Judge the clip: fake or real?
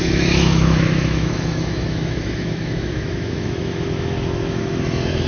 fake